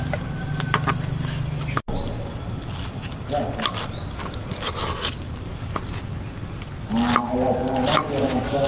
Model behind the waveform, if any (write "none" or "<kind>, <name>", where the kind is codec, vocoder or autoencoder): none